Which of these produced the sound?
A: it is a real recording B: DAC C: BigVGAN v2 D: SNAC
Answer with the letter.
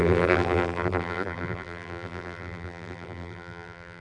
C